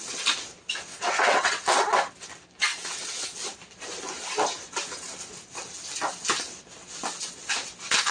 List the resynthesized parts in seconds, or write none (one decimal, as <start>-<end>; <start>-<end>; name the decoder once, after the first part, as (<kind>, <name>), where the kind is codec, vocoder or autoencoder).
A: 0.9-1.6 (vocoder, WaveNeXt); 2.7-3.4